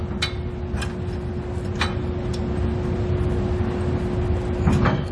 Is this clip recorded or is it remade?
recorded